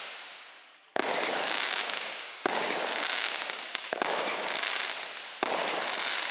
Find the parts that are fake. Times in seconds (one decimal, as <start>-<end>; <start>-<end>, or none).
0.9-4.7